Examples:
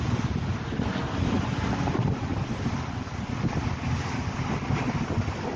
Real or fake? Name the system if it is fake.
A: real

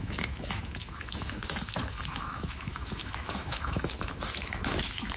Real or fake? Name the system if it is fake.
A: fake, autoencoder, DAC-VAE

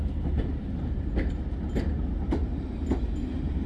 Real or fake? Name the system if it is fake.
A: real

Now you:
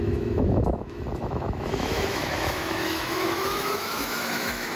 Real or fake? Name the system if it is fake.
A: fake, autoencoder, DAC-VAE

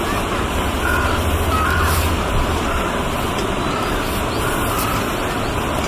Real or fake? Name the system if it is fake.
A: real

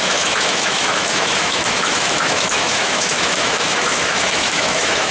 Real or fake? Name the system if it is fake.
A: fake, autoencoder, DAC-VAE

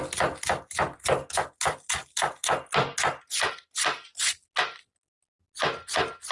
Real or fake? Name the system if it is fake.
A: real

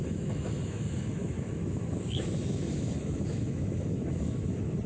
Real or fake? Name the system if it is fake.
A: fake, autoencoder, DAC-VAE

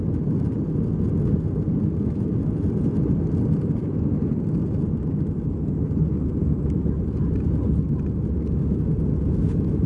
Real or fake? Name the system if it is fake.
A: real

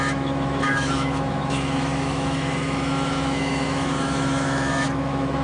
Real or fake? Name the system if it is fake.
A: fake, autoencoder, DAC-VAE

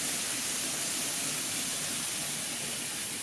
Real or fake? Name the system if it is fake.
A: real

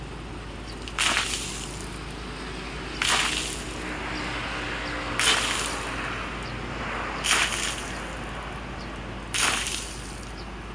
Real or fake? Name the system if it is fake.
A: real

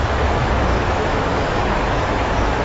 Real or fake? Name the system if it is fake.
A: fake, autoencoder, DAC-VAE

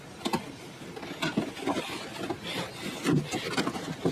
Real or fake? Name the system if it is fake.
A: real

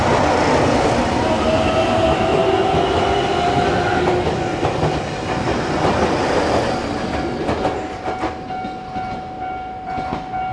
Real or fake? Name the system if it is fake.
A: real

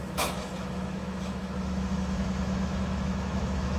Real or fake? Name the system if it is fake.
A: fake, autoencoder, DAC-VAE